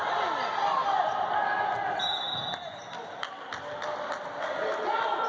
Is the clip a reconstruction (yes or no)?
no